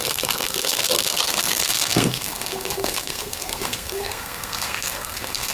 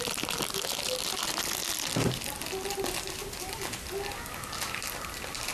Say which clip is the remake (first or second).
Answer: first